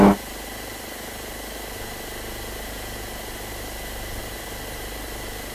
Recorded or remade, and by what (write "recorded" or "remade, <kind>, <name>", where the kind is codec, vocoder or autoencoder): recorded